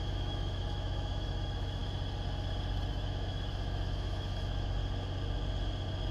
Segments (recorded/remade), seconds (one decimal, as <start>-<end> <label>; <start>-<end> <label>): 0.0-1.8 remade; 1.8-2.9 recorded; 2.9-4.8 remade; 4.8-6.1 recorded